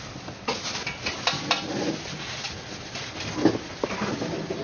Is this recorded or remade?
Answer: recorded